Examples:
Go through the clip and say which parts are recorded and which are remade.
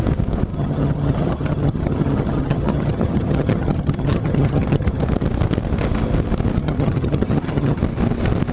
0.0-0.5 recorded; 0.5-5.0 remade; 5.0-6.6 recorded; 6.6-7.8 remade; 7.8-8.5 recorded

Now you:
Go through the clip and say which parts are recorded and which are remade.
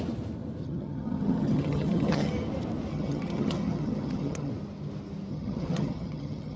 0.0-0.6 recorded; 0.6-2.3 remade; 2.3-2.9 recorded; 2.9-4.5 remade; 4.5-5.3 recorded; 5.3-6.6 remade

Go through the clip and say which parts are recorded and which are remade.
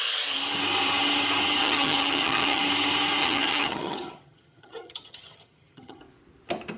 0.0-1.6 recorded; 1.6-2.6 remade; 2.6-3.2 recorded; 3.2-6.0 remade; 6.0-6.8 recorded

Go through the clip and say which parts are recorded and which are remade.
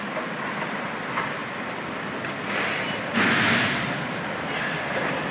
0.0-5.3 recorded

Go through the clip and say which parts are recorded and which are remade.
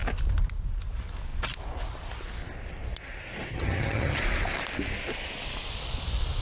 0.0-3.5 recorded; 3.5-4.2 remade; 4.2-6.4 recorded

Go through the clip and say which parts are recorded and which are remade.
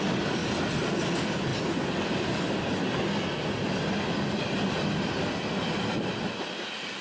0.0-7.0 recorded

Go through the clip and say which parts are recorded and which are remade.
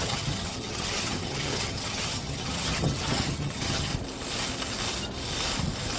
0.0-3.9 remade; 3.9-6.0 recorded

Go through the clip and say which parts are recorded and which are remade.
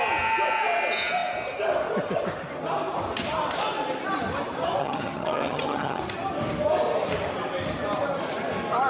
0.0-4.8 recorded; 4.8-6.0 remade; 6.0-8.9 recorded